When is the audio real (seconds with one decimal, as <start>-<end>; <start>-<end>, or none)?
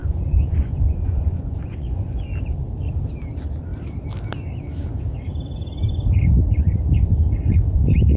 2.2-8.2